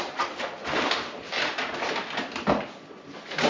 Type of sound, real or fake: real